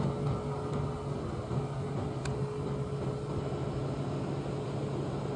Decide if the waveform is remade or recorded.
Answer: recorded